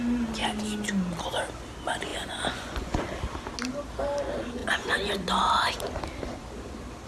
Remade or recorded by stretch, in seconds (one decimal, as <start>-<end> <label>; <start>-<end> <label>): 0.0-2.1 recorded; 2.1-3.0 remade; 3.0-4.6 recorded; 4.6-5.1 remade; 5.1-7.1 recorded